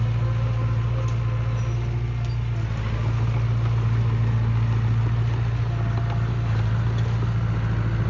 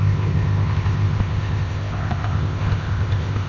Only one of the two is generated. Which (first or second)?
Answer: second